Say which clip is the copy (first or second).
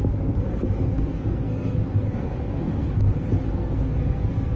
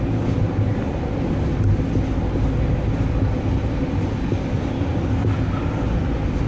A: first